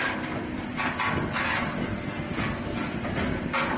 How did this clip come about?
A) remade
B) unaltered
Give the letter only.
B